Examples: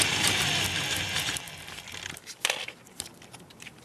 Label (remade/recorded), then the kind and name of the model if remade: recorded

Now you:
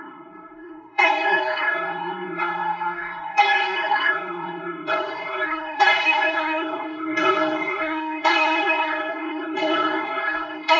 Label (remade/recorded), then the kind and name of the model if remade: remade, codec, SNAC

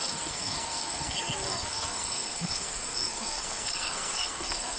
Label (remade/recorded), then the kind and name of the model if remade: remade, codec, SNAC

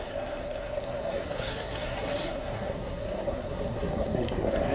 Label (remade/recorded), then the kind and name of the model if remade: remade, codec, SNAC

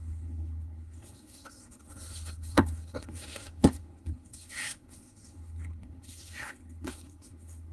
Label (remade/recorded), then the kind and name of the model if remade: remade, codec, SNAC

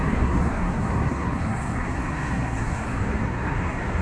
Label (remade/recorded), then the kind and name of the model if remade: remade, codec, SNAC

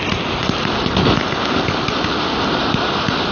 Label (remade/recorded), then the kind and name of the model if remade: recorded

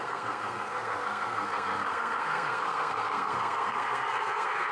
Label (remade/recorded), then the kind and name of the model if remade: remade, codec, SNAC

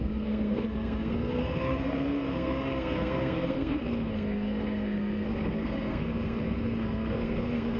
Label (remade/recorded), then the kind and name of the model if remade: remade, codec, SNAC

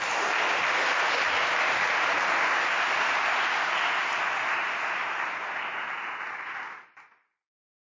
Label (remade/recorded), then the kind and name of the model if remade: recorded